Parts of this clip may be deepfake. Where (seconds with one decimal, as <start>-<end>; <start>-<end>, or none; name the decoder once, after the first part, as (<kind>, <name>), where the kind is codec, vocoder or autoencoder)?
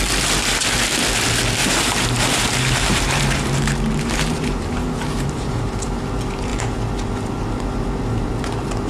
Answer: 1.6-6.0 (vocoder, BigVGAN v2)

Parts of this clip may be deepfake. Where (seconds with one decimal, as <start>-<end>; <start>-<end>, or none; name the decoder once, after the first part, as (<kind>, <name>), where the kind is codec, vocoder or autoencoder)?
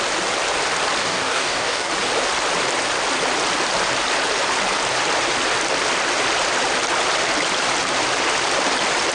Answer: 1.0-1.9 (codec, DAC)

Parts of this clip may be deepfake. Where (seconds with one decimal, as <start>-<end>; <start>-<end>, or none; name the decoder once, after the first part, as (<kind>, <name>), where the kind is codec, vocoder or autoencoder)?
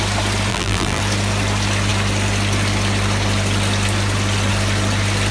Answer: 0.5-1.0 (vocoder, BigVGAN v2)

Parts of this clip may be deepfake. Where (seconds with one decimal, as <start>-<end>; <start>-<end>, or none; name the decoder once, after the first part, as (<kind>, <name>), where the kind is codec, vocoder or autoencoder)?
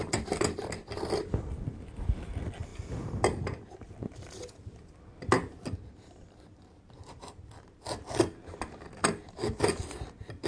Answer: none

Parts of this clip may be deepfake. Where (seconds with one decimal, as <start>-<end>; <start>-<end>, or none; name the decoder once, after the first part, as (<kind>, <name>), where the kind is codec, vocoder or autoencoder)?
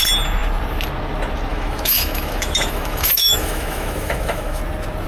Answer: 1.5-4.6 (autoencoder, DAC-VAE)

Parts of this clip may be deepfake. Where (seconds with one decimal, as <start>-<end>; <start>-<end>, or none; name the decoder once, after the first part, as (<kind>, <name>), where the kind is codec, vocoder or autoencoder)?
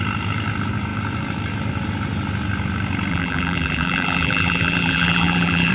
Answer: 3.1-5.7 (vocoder, BigVGAN v2)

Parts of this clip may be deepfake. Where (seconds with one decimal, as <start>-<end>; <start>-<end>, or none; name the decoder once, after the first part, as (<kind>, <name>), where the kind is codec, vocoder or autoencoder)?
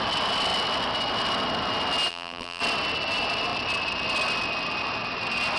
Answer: 2.1-2.6 (vocoder, BigVGAN v2)